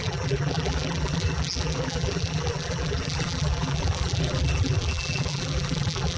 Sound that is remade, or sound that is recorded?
remade